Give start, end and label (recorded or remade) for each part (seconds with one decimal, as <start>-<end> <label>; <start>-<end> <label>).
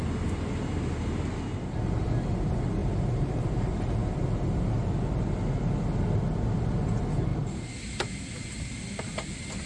0.0-2.8 recorded; 2.8-4.1 remade; 4.1-7.3 recorded; 7.3-8.0 remade; 8.0-9.7 recorded